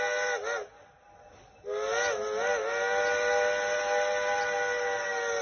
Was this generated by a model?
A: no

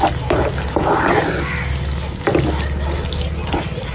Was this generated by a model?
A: no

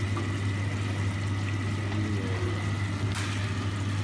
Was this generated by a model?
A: no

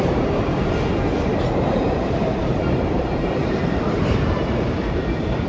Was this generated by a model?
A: yes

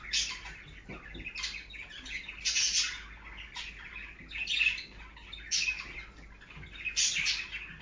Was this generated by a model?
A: no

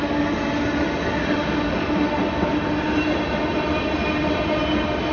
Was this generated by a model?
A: no